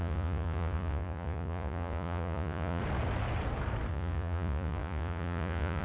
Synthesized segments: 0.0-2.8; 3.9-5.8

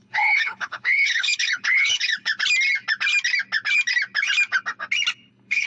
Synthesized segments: 0.0-2.3; 5.3-5.7

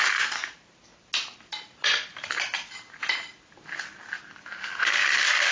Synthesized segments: none

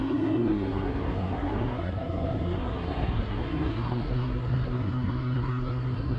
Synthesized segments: 0.0-6.2